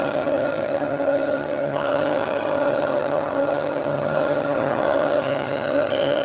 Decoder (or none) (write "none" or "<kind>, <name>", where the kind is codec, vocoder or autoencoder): vocoder, HiFi-GAN